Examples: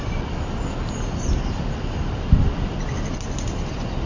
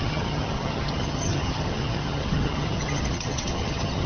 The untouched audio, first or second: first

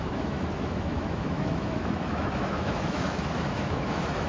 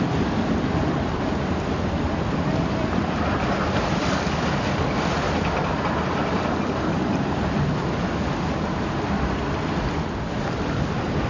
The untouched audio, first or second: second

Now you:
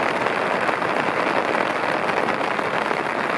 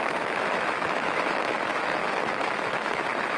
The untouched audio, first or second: first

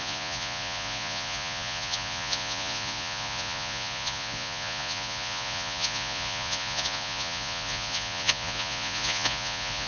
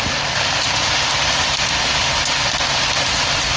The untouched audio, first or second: second